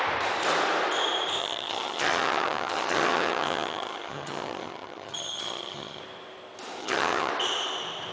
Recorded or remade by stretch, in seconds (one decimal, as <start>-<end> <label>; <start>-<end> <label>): 0.0-1.4 recorded; 1.4-6.0 remade; 6.0-6.8 recorded; 6.8-7.3 remade; 7.3-8.1 recorded